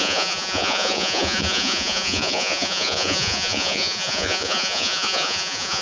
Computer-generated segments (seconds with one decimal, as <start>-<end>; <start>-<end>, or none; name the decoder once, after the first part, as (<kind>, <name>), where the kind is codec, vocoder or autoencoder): 0.0-5.8 (vocoder, Vocos)